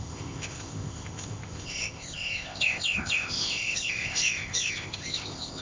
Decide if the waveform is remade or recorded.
remade